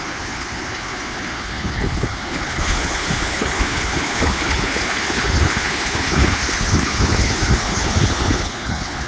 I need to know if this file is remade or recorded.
remade